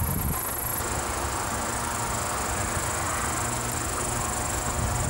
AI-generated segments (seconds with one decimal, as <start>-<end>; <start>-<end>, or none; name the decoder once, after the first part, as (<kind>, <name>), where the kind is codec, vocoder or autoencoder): none